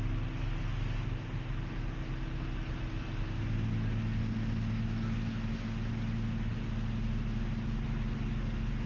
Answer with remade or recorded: recorded